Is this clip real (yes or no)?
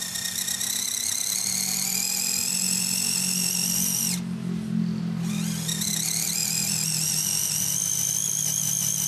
yes